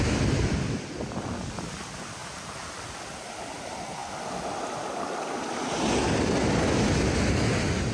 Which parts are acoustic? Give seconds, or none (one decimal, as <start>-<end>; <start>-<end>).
0.0-2.2; 2.7-7.9